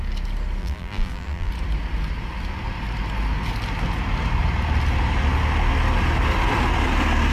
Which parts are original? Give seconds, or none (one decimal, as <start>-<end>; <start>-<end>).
0.0-0.6; 1.5-7.3